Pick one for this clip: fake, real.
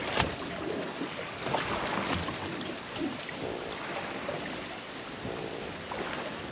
real